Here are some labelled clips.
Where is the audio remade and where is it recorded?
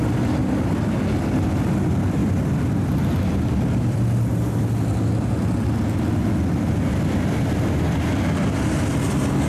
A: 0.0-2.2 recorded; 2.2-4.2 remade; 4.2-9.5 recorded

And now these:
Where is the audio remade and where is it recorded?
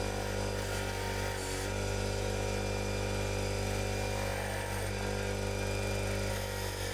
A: 0.0-6.9 recorded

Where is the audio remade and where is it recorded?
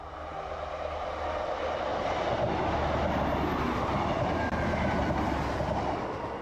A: 0.0-6.4 recorded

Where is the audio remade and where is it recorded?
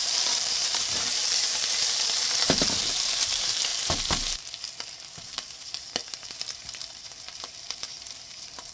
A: 0.0-3.7 remade; 3.7-5.2 recorded; 5.2-8.7 remade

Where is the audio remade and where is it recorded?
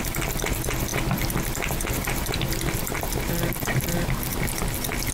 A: 0.0-5.1 recorded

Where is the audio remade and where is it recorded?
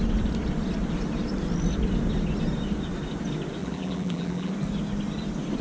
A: 0.0-3.6 recorded; 3.6-4.5 remade; 4.5-5.6 recorded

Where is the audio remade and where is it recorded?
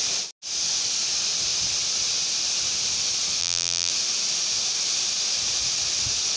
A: 0.0-3.4 recorded; 3.4-3.9 remade; 3.9-6.4 recorded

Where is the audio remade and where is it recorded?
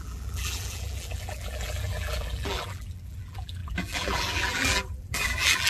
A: 0.0-5.7 remade